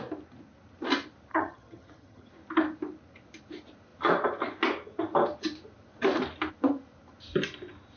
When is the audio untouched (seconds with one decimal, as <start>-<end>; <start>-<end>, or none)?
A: 0.0-1.3; 2.3-8.0